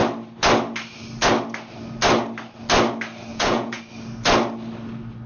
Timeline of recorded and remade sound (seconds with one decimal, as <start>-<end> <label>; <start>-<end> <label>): 0.0-3.3 recorded; 3.3-3.8 remade; 3.8-5.3 recorded